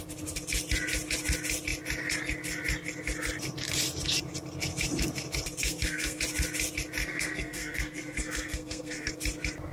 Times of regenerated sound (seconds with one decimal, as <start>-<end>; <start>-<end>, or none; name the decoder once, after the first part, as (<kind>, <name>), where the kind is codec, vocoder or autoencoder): 5.6-6.2 (codec, SNAC); 7.0-9.1